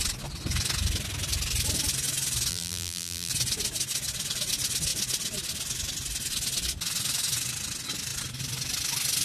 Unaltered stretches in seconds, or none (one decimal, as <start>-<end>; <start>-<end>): 0.0-2.5; 3.3-9.2